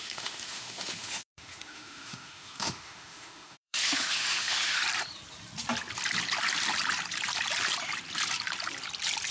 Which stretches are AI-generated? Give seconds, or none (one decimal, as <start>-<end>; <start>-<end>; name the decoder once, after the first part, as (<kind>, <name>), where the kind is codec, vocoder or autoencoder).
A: 0.0-4.8 (autoencoder, DAC-VAE)